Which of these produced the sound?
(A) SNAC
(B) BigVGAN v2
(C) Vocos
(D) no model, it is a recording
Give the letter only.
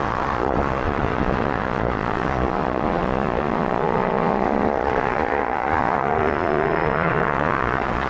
C